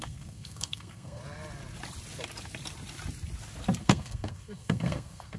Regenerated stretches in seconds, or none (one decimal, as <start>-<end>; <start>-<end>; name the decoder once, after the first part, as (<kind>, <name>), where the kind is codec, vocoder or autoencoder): 0.0-1.2 (codec, SNAC); 3.8-5.4